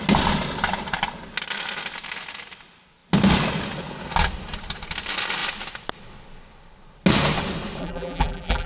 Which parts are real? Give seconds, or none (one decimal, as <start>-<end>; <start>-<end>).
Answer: 0.0-7.8